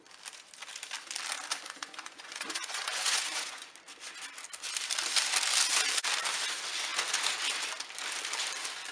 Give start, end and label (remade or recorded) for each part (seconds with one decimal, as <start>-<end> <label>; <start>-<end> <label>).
0.0-1.5 recorded; 1.5-3.7 remade; 3.7-8.9 recorded